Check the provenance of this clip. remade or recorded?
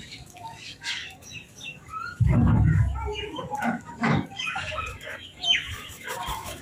remade